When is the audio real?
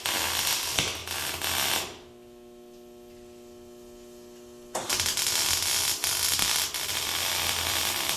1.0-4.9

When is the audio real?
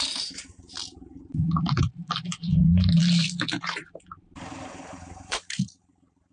3.0-3.6